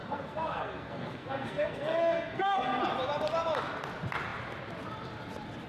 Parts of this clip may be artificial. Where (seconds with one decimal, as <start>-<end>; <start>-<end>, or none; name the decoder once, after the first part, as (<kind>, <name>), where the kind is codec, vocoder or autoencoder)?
0.0-2.8 (codec, SNAC)